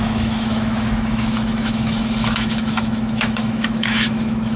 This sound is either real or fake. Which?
fake